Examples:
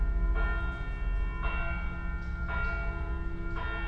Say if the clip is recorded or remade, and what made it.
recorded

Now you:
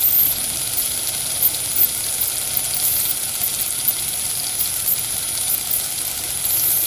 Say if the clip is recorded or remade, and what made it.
recorded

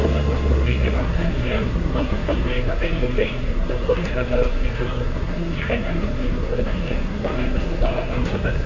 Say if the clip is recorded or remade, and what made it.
remade, codec, SNAC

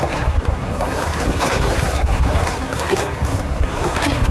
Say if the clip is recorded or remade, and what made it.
remade, codec, SNAC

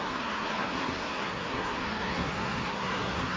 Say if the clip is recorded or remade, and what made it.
remade, codec, SNAC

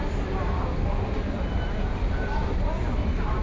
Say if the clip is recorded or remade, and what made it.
recorded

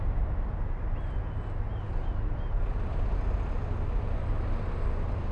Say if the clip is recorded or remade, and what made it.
recorded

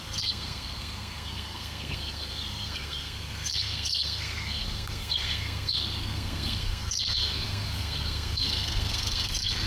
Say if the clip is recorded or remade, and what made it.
remade, codec, SNAC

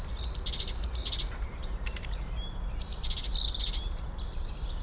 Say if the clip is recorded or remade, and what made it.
recorded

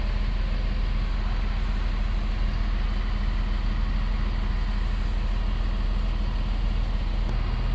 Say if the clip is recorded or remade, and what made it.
recorded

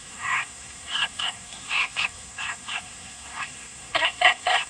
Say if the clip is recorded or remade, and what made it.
remade, codec, SNAC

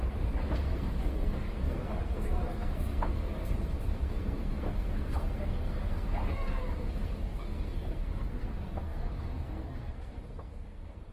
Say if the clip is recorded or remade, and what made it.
remade, codec, SNAC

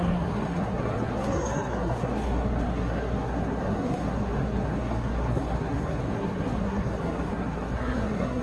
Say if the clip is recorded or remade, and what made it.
remade, codec, SNAC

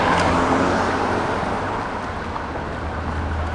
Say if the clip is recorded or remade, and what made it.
recorded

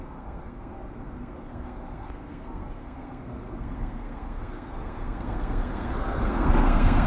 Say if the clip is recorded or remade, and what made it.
remade, codec, SNAC